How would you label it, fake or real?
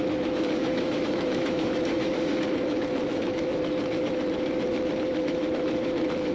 fake